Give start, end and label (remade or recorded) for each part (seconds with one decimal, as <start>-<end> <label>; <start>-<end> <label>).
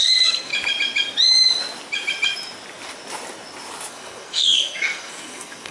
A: 0.0-0.5 remade; 0.5-3.9 recorded; 3.9-5.7 remade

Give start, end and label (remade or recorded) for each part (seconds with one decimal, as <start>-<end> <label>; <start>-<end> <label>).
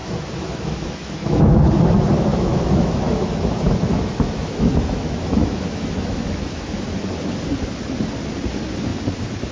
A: 0.0-1.7 remade; 1.7-2.3 recorded; 2.3-6.8 remade; 6.8-9.5 recorded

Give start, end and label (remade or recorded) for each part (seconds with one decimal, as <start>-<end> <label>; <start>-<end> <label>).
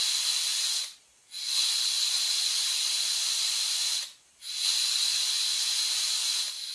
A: 0.0-0.5 recorded; 0.5-4.5 remade; 4.5-6.7 recorded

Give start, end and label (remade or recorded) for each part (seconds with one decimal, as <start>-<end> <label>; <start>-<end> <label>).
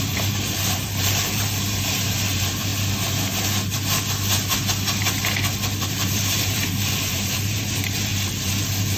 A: 0.0-2.7 remade; 2.7-5.9 recorded; 5.9-9.0 remade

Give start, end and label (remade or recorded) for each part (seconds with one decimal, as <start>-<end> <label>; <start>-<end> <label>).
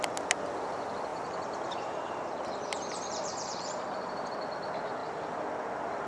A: 0.0-1.1 recorded; 1.1-4.3 remade; 4.3-6.1 recorded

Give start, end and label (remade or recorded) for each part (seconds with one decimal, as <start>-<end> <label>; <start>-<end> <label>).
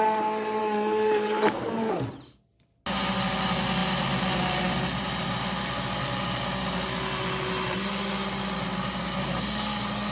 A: 0.0-0.6 recorded; 0.6-2.0 remade; 2.0-10.1 recorded